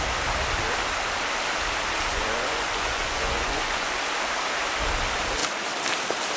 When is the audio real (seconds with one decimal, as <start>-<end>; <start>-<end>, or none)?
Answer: 0.0-2.1; 4.0-6.4

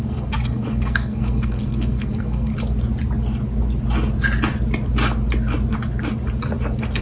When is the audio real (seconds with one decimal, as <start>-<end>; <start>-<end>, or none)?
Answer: 2.5-7.0

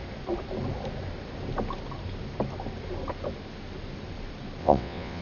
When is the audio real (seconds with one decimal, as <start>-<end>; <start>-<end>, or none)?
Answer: 0.0-4.6

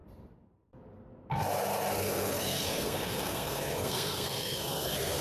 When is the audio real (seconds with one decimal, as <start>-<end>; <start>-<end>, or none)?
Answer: 0.0-2.0

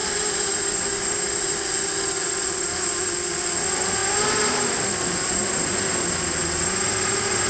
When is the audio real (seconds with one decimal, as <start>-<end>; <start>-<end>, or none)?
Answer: 0.0-7.5

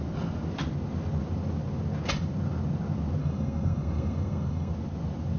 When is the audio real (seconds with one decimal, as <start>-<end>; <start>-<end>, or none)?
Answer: 0.0-3.2; 4.7-5.4

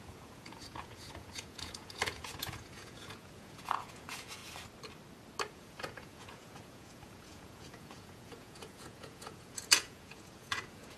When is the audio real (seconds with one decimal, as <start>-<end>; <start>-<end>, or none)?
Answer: 4.4-5.5

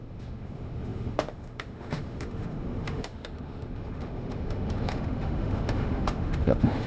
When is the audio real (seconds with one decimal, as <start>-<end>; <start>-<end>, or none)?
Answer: none